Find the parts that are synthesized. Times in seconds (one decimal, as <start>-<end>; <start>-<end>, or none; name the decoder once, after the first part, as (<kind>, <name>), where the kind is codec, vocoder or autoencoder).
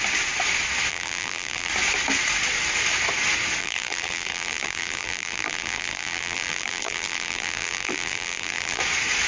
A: 0.9-1.7 (vocoder, BigVGAN v2); 3.6-8.8